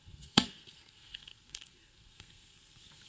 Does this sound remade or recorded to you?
remade